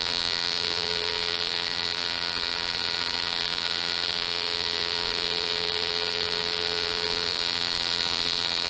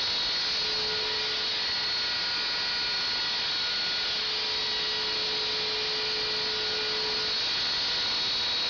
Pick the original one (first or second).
second